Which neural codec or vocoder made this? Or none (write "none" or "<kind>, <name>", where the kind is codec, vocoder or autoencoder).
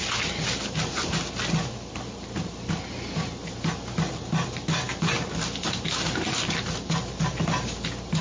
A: none